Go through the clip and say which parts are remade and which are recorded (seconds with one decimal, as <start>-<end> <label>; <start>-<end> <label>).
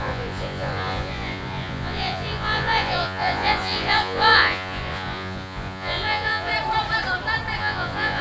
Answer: 0.0-6.5 remade; 6.5-7.6 recorded; 7.6-8.2 remade